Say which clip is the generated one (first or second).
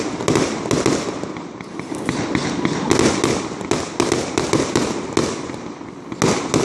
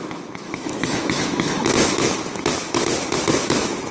second